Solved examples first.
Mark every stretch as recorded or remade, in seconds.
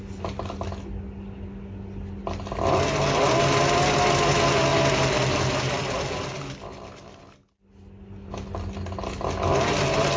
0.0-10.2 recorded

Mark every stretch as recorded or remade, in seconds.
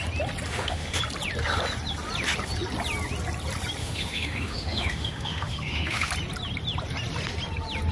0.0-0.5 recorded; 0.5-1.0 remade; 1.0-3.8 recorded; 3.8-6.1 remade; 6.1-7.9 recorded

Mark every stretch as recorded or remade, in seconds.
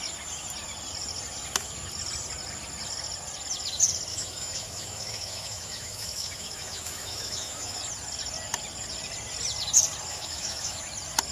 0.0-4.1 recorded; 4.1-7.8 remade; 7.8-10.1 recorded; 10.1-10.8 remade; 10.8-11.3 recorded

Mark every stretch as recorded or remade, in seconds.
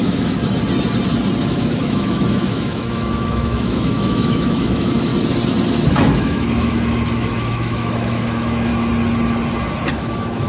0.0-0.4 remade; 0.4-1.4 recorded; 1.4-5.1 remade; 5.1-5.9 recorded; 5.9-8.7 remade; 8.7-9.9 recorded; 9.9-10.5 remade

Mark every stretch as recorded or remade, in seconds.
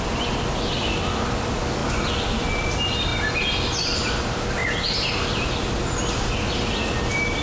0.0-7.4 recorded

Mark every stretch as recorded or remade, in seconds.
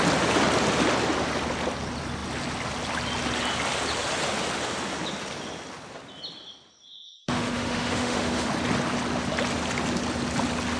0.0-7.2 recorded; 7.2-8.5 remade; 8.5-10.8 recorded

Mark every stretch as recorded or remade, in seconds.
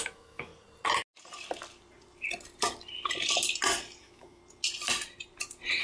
0.0-0.5 remade; 0.5-4.0 recorded; 4.0-4.4 remade; 4.4-5.8 recorded